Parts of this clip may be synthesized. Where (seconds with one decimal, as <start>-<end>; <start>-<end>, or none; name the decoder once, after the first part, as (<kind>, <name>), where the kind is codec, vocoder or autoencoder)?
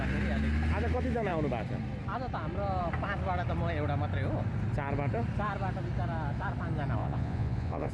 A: 7.0-7.9 (vocoder, Vocos)